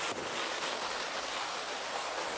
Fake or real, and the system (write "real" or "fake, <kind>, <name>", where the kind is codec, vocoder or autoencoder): real